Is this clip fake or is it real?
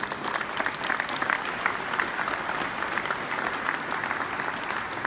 real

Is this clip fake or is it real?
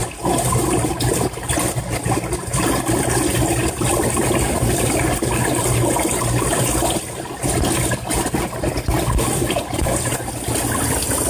real